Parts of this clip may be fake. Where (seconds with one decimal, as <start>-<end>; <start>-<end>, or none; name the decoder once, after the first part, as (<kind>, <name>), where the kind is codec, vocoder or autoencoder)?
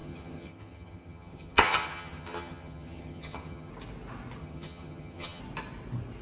0.0-3.7 (vocoder, HiFi-GAN); 4.4-5.4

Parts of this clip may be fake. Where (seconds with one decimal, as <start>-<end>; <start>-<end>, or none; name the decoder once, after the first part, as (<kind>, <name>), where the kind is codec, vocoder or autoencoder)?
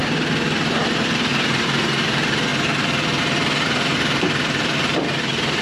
0.0-2.5 (vocoder, BigVGAN v2); 3.2-5.6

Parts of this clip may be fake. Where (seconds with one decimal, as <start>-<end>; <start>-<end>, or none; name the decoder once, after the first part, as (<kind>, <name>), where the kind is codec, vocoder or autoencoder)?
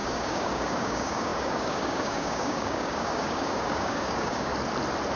0.0-4.5 (codec, DAC)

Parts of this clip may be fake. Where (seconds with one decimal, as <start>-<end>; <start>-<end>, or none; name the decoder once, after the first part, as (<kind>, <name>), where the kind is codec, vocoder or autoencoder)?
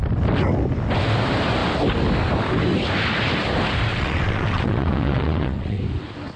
3.9-5.8 (vocoder, WaveNeXt)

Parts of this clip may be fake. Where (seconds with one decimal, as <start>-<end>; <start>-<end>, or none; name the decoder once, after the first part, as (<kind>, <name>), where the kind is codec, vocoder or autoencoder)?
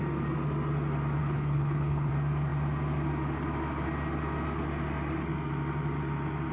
1.2-2.1 (codec, HILCodec)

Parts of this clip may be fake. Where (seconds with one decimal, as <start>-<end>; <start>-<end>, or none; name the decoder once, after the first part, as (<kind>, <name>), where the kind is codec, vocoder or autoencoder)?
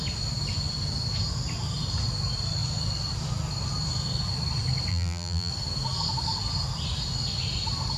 4.9-5.5 (vocoder, BigVGAN v2)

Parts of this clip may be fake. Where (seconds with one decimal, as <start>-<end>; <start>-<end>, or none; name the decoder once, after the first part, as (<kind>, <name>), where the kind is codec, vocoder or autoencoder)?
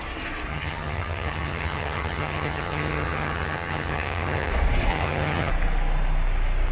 0.5-4.5 (vocoder, HiFi-GAN); 4.9-5.5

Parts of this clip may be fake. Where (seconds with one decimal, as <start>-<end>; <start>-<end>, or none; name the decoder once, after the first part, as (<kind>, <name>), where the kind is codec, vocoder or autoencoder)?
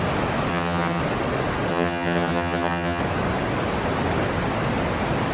0.5-1.0 (vocoder, HiFi-GAN); 1.7-3.0